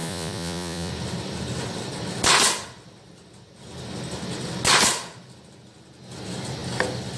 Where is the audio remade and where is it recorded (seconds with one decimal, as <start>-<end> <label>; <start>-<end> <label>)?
0.0-0.9 remade; 0.9-7.2 recorded